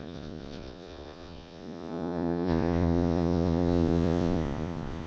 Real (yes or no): no